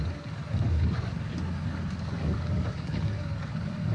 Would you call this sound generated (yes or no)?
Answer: yes